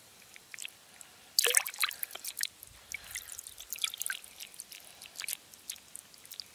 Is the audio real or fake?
real